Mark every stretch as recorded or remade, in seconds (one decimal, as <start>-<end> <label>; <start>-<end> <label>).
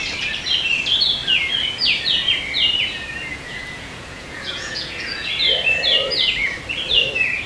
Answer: 0.0-3.3 recorded; 3.3-5.3 remade; 5.3-7.5 recorded